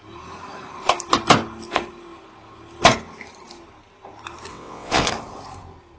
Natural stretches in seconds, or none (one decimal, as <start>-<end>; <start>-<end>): 0.0-4.5; 5.1-6.0